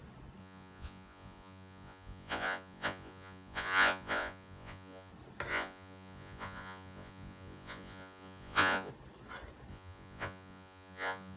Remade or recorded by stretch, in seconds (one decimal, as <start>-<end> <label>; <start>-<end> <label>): 0.0-0.4 recorded; 0.4-5.1 remade; 5.1-5.5 recorded; 5.5-8.9 remade; 8.9-9.7 recorded; 9.7-11.4 remade